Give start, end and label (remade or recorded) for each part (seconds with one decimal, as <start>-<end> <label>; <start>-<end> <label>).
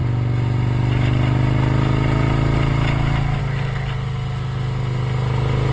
0.0-5.7 recorded